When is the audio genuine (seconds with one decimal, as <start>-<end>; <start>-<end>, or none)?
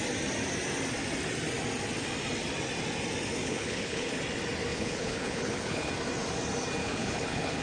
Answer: 0.0-3.4; 4.2-4.7; 5.9-6.8